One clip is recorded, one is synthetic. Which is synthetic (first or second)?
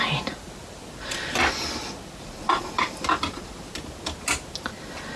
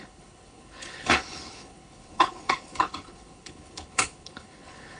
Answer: second